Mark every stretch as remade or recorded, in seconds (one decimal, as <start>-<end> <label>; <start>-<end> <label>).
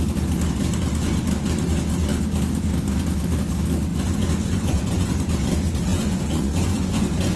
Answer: 0.0-3.9 recorded; 3.9-5.1 remade; 5.1-5.9 recorded; 5.9-7.4 remade